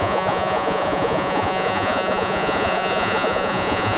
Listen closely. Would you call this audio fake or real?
fake